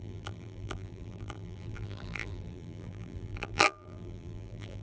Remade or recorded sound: remade